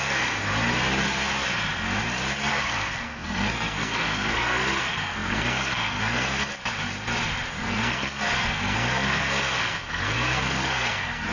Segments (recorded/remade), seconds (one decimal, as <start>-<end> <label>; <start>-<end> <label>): 0.0-0.5 remade; 0.5-2.5 recorded; 2.5-6.5 remade; 6.5-7.5 recorded; 7.5-11.3 remade